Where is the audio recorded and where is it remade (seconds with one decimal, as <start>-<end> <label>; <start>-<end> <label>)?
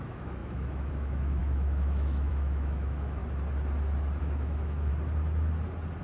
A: 0.0-3.2 remade; 3.2-4.2 recorded; 4.2-4.9 remade; 4.9-6.0 recorded